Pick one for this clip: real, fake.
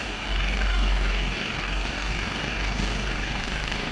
fake